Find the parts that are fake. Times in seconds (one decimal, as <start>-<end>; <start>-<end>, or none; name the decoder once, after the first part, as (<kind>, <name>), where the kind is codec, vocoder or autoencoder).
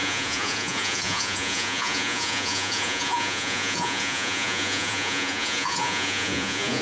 0.0-6.8 (vocoder, Vocos)